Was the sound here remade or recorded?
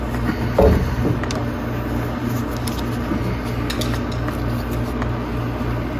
recorded